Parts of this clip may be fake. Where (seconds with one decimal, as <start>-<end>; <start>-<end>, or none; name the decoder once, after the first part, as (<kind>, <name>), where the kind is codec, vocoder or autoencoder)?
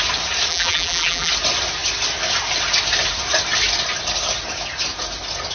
0.5-1.3 (vocoder, BigVGAN v2)